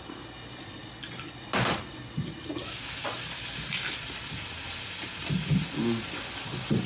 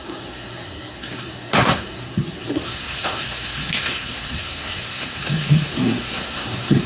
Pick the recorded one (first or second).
first